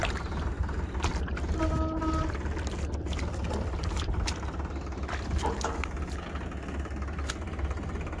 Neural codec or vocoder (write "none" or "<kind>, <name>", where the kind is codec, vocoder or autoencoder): none